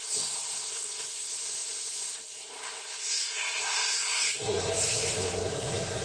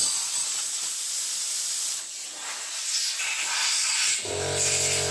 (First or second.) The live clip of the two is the second